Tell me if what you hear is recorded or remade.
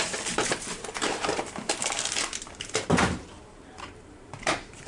remade